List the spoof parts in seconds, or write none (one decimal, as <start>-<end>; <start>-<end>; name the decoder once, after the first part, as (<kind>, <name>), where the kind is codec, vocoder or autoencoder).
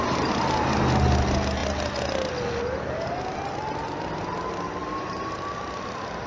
none